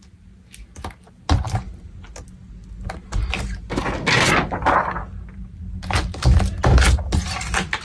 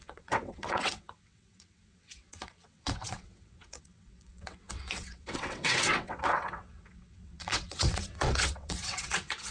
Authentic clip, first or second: first